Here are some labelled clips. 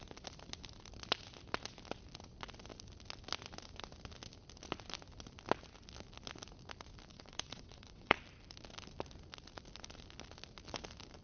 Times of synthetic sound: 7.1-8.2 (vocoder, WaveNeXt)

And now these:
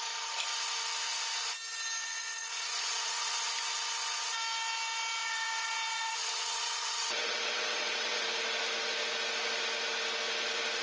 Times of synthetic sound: 2.0-3.5 (vocoder, WaveNeXt); 5.2-8.2